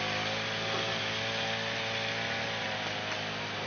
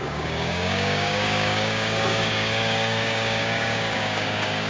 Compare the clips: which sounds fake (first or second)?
second